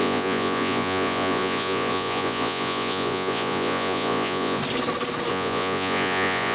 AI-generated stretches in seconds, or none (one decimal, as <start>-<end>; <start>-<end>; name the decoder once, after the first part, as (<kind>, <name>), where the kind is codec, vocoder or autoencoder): 0.0-4.6 (vocoder, Vocos); 5.3-6.5